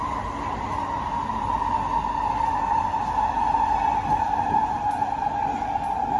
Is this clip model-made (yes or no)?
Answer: no